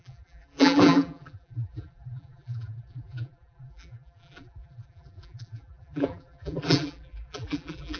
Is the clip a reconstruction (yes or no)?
yes